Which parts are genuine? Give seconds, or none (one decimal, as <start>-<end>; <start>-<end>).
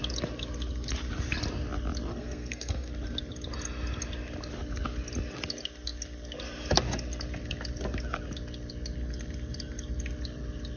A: 0.0-2.1; 2.9-10.8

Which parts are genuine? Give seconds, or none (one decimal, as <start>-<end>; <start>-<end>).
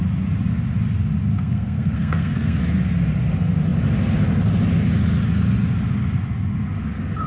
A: 0.0-1.3; 2.6-7.3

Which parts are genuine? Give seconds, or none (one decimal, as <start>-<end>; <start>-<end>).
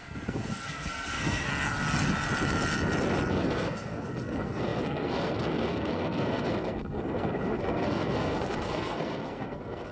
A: 1.5-3.3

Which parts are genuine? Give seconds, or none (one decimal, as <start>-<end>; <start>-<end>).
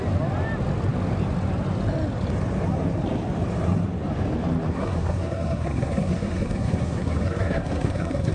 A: 0.0-4.7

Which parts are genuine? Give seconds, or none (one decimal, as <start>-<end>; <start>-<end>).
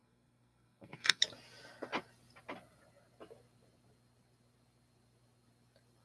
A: 1.2-6.0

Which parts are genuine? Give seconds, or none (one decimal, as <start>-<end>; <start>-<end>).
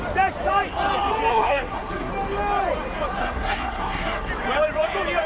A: 0.0-1.3; 2.1-3.2; 4.3-5.3